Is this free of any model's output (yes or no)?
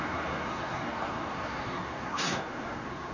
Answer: no